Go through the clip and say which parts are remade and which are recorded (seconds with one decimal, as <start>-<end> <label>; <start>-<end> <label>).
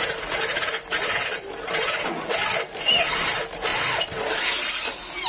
0.0-0.5 recorded; 0.5-2.3 remade; 2.3-3.7 recorded; 3.7-4.4 remade; 4.4-5.3 recorded